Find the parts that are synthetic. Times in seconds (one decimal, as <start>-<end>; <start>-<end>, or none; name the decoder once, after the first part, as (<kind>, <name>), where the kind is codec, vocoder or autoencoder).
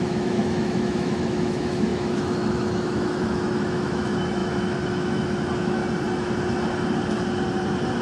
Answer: 0.0-5.8 (autoencoder, DAC-VAE)